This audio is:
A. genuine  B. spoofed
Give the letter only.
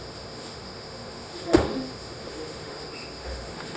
B